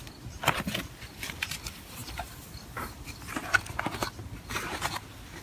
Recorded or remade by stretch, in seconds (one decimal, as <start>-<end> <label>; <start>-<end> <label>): 0.0-5.4 recorded